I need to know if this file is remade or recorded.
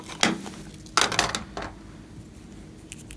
recorded